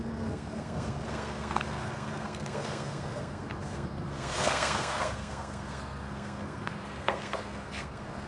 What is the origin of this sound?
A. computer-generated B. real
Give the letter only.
A